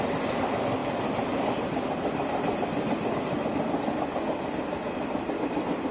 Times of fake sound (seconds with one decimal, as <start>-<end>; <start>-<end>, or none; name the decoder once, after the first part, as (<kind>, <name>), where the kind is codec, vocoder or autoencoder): none